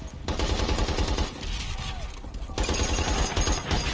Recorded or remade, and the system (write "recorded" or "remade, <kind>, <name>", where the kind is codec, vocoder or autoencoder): recorded